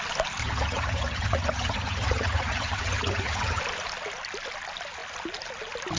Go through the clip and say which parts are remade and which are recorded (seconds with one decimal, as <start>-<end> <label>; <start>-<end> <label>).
0.0-0.4 recorded; 0.4-3.6 remade; 3.6-6.0 recorded